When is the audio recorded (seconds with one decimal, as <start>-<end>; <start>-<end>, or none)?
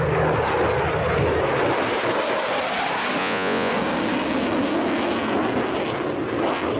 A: 0.0-3.2; 3.7-6.8